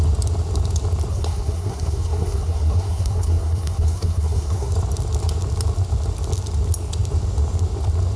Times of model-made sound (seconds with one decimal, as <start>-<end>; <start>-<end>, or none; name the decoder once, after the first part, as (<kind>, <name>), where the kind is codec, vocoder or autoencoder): 1.1-4.7 (codec, SNAC)